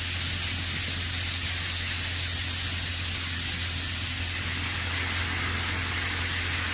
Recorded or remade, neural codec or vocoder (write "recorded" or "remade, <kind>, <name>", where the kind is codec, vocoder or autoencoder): recorded